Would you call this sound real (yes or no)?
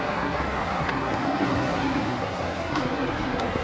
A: no